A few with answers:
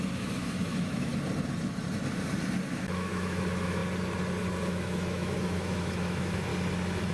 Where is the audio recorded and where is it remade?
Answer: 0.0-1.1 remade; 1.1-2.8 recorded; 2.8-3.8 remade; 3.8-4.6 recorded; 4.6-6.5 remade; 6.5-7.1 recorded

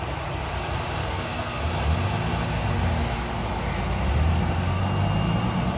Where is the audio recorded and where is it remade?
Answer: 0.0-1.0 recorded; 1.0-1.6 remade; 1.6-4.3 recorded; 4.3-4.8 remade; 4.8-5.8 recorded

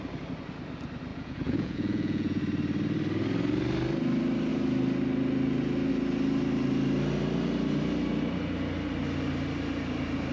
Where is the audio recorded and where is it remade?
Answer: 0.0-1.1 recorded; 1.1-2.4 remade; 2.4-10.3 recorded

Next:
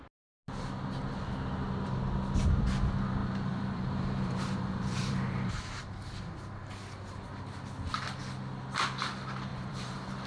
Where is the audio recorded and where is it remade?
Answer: 0.0-3.2 recorded; 3.2-5.6 remade; 5.6-9.5 recorded; 9.5-10.3 remade

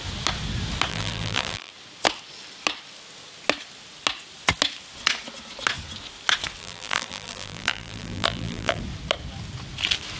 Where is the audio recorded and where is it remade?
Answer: 0.0-0.9 recorded; 0.9-1.7 remade; 1.7-6.6 recorded; 6.6-8.8 remade; 8.8-10.2 recorded